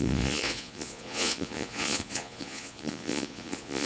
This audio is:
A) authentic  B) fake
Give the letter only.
B